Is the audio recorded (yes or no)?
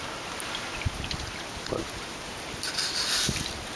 yes